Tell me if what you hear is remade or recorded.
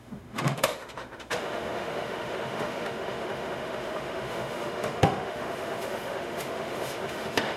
remade